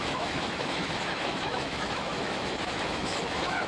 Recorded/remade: remade